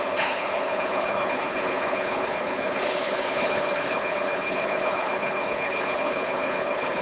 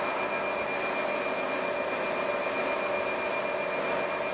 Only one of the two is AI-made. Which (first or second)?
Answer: first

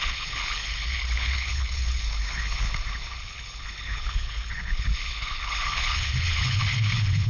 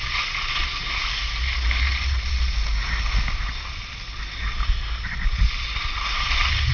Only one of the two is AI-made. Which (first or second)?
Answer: first